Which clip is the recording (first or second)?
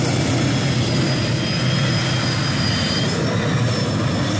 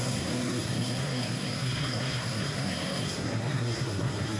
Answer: first